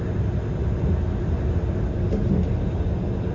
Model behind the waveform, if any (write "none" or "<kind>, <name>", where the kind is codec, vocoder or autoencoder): none